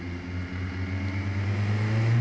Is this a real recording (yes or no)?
yes